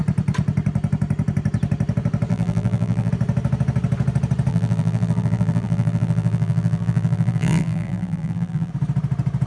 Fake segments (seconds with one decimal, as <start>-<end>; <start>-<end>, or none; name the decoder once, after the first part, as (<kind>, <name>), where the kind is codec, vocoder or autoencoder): 2.3-3.1 (vocoder, BigVGAN v2); 4.5-8.7